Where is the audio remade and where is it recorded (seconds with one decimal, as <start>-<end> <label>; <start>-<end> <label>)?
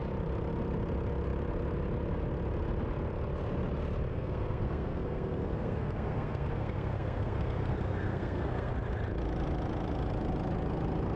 0.0-4.1 recorded; 4.1-8.7 remade; 8.7-11.2 recorded